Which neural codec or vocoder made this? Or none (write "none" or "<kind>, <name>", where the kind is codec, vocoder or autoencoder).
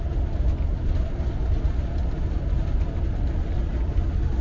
none